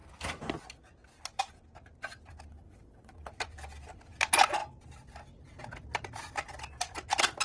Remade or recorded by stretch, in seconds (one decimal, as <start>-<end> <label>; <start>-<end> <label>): 0.0-2.5 recorded; 2.5-3.3 remade; 3.3-7.4 recorded